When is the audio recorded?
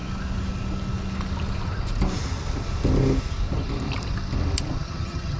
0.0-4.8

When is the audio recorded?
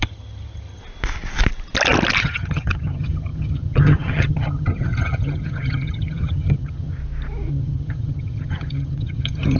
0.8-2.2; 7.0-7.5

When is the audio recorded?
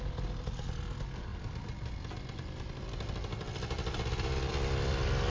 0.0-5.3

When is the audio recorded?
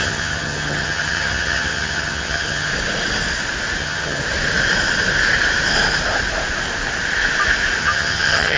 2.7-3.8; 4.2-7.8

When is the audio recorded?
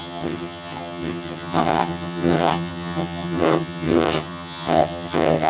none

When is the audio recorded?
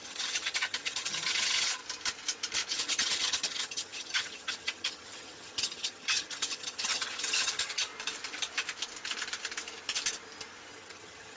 1.8-2.7; 7.9-10.7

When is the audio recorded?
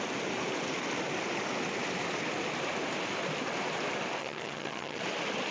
0.0-4.2; 5.0-5.5